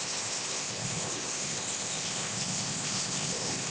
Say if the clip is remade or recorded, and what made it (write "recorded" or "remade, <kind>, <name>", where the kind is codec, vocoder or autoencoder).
remade, codec, ZipCodec